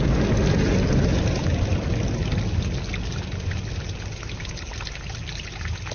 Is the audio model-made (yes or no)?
no